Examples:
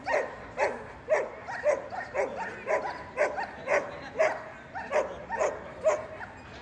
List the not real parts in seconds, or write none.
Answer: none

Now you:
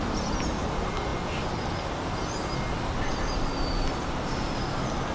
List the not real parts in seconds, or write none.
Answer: none

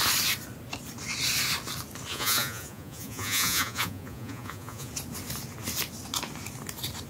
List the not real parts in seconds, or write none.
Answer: 2.1-4.9 (vocoder, Vocos)

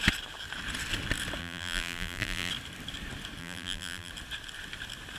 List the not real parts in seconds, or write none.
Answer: 1.4-2.5 (vocoder, BigVGAN v2); 3.4-4.1

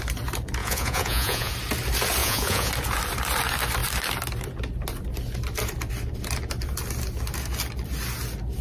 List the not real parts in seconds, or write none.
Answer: 0.6-1.5 (vocoder, Vocos); 2.2-2.7

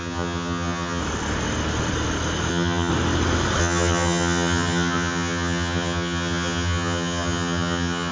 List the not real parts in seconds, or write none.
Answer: 0.0-1.0 (vocoder, HiFi-GAN); 2.5-2.9; 3.6-8.1